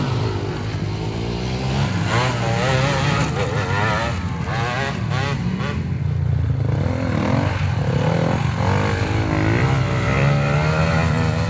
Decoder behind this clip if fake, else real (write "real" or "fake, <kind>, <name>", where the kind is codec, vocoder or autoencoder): real